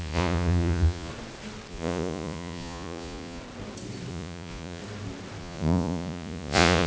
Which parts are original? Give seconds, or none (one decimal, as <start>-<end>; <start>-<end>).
1.1-1.7; 3.4-4.1; 4.8-5.4